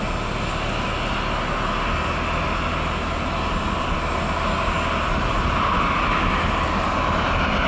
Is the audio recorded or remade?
recorded